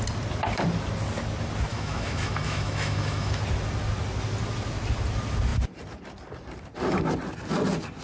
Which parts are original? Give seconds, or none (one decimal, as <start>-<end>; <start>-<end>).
0.0-1.7; 3.4-8.0